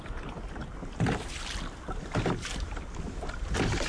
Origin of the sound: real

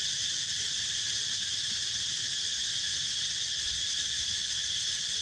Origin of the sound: real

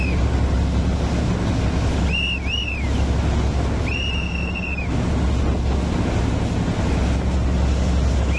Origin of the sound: real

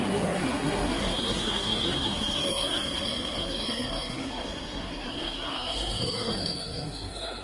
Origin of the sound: fake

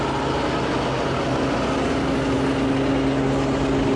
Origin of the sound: real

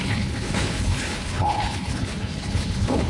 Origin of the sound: fake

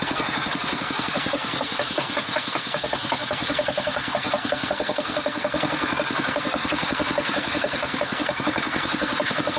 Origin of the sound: fake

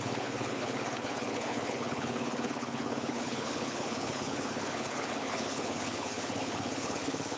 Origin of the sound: fake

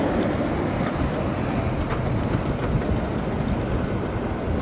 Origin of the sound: real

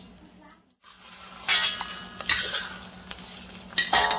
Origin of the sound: real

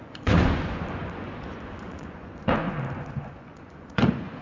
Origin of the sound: fake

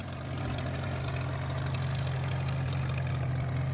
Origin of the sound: real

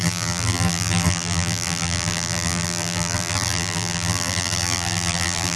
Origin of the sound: fake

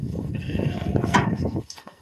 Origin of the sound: fake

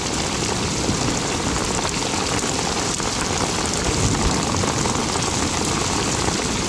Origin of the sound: real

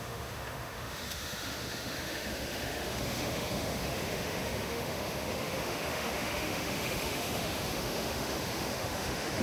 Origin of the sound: fake